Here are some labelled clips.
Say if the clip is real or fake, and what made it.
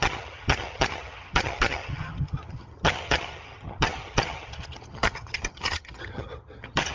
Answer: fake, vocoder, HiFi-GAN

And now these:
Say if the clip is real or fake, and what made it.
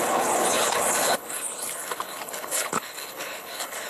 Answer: fake, codec, HILCodec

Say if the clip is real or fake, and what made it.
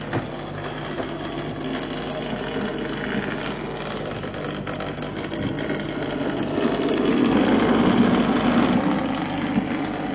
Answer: real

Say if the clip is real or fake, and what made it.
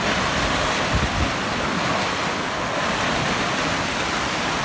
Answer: real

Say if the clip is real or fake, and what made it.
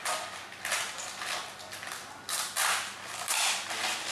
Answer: real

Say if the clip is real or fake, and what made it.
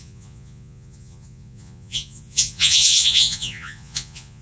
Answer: fake, vocoder, Vocos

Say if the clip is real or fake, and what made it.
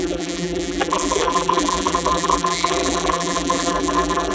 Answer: fake, vocoder, BigVGAN v2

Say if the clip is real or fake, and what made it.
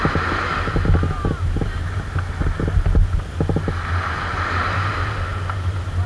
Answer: real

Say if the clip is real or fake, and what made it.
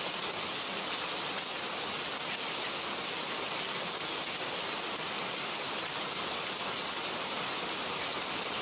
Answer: real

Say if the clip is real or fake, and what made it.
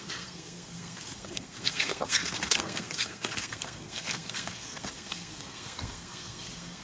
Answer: fake, codec, SNAC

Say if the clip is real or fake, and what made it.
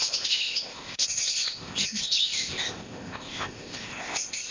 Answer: fake, codec, ZipCodec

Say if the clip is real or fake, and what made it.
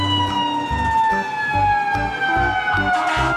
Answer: real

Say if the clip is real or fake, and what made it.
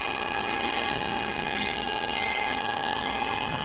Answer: fake, vocoder, HiFi-GAN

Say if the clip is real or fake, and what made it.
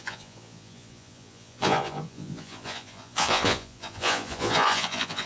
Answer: fake, vocoder, Vocos